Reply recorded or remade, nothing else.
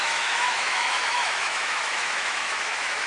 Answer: remade